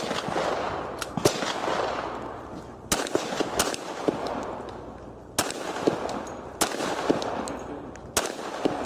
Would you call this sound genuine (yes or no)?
yes